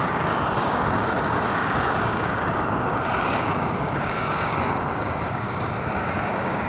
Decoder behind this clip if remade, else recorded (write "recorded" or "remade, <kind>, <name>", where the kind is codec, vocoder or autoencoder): remade, codec, DAC